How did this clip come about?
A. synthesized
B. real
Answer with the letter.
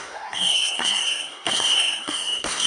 A